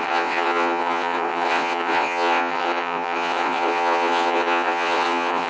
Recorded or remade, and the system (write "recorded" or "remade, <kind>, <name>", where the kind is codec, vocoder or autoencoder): remade, vocoder, WaveNeXt